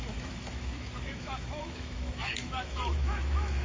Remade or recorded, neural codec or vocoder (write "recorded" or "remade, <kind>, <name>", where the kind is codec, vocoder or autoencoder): remade, autoencoder, DAC-VAE